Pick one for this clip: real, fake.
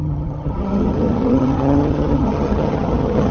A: fake